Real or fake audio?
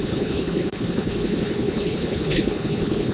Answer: fake